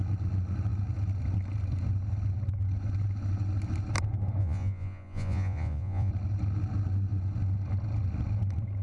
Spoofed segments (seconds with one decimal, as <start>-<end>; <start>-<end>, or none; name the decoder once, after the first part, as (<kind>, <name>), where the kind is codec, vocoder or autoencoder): 4.4-6.1 (vocoder, Vocos)